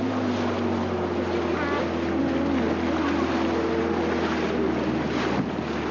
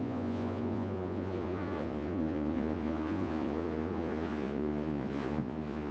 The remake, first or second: second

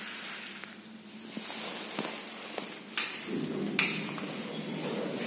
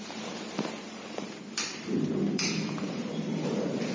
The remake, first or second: second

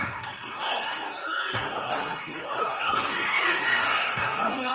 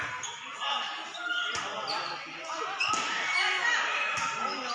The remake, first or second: first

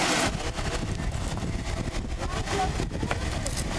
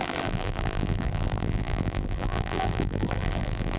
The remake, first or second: second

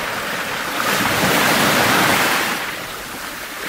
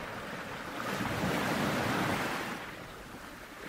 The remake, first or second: first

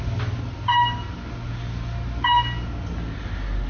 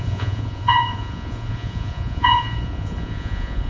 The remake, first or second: second